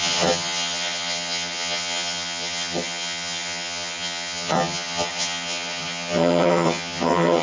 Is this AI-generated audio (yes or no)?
yes